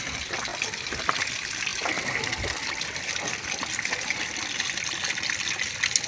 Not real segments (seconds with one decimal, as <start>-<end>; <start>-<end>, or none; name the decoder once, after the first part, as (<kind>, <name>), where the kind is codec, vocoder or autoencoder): none